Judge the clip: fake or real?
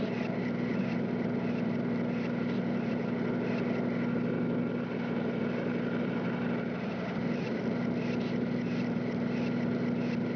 real